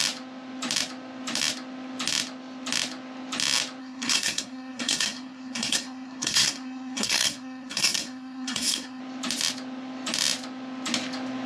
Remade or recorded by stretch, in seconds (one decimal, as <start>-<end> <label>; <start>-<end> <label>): 0.0-3.8 recorded; 3.8-9.0 remade; 9.0-11.5 recorded